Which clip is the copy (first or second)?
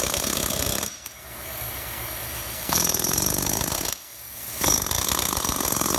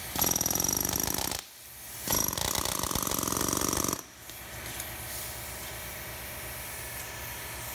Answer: first